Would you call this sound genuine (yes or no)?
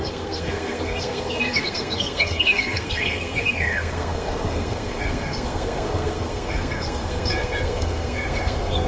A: no